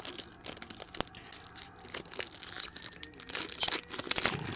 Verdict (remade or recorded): recorded